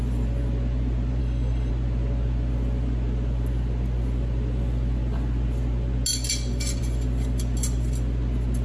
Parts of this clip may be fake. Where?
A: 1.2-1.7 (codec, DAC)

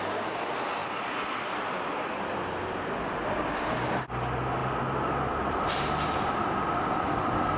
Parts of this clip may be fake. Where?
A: none

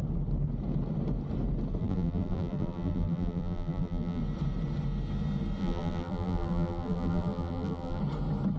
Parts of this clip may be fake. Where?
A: 1.8-4.2 (vocoder, BigVGAN v2); 5.6-8.0

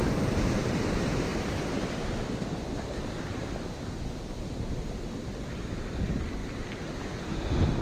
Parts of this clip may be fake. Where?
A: none